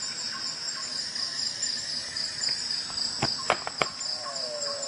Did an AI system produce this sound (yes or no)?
no